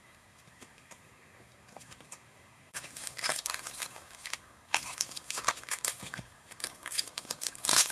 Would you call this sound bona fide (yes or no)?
no